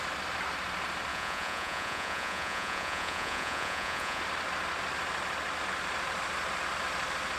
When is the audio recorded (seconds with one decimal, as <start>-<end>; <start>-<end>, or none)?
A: 0.0-1.1; 4.2-7.4